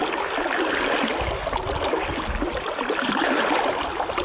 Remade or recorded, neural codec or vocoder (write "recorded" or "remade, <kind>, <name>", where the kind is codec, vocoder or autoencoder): recorded